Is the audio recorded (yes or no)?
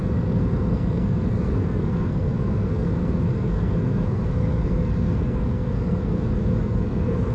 no